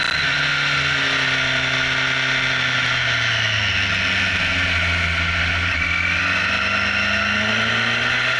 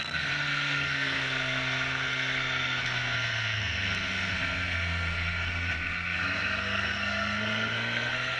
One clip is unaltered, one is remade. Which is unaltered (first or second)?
first